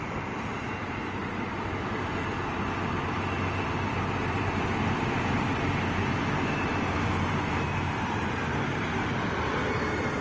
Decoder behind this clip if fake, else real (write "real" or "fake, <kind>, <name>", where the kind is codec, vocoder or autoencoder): fake, vocoder, BigVGAN v2